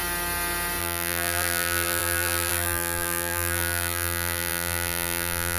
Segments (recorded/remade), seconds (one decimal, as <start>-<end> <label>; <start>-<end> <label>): 0.0-0.8 recorded; 0.8-5.6 remade